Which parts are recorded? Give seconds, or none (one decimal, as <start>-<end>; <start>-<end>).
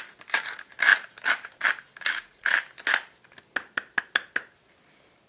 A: 0.0-5.3